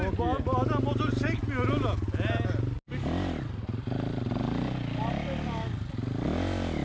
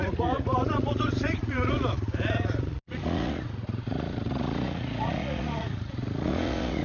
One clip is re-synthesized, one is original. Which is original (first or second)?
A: first